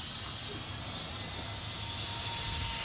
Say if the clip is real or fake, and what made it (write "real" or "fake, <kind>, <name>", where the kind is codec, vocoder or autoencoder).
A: real